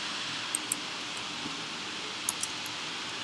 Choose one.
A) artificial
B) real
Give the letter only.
B